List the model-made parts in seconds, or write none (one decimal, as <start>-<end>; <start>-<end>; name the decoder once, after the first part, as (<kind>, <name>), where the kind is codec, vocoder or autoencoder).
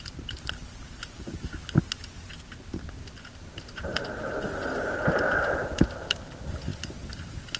none